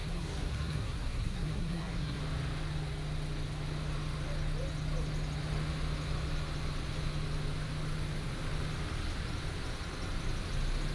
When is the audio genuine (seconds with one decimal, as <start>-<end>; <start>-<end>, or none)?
2.2-10.9